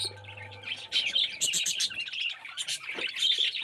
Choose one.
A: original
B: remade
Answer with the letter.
B